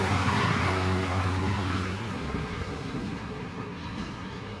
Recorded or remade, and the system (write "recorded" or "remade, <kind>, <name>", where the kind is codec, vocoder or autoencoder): remade, codec, SNAC